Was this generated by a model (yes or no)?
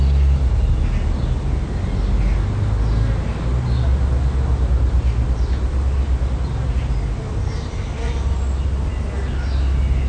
no